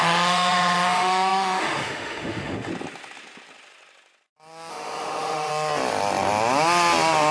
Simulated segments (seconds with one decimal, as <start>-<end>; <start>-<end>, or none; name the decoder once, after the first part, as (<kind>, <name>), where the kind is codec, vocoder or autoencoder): 0.0-2.7 (autoencoder, DAC-VAE); 4.7-5.5